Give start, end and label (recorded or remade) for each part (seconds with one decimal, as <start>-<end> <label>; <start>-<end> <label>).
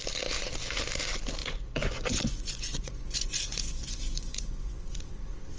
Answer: 0.0-1.4 recorded; 1.4-4.8 remade; 4.8-5.6 recorded